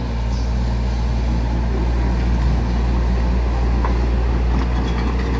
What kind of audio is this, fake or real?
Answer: real